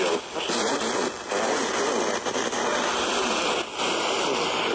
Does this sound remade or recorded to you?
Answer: recorded